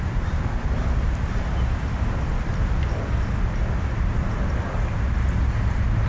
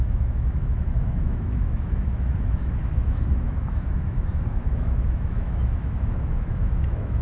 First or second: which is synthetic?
second